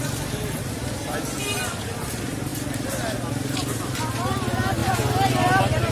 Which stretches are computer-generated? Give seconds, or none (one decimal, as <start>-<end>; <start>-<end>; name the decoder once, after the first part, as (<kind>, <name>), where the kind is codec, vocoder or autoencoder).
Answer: none